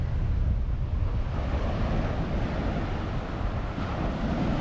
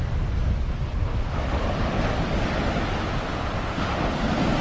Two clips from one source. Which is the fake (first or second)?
second